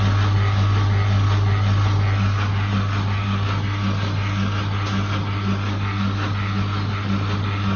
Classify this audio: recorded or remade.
recorded